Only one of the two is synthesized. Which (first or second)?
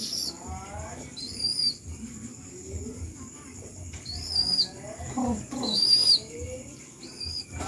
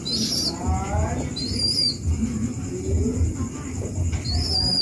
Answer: first